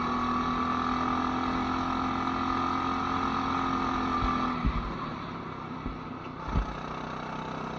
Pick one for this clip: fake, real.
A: real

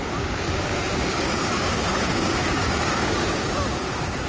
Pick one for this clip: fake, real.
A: fake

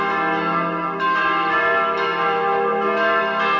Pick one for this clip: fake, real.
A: real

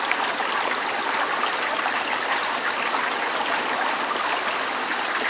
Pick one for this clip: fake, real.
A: real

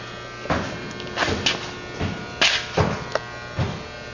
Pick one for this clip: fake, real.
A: real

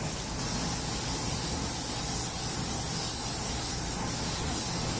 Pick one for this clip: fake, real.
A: real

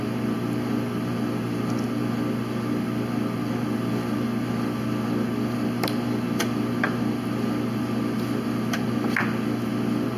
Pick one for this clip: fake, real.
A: real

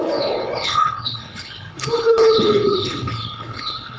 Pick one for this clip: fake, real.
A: fake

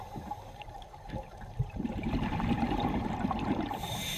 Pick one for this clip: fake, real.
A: fake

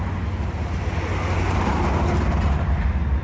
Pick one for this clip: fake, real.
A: real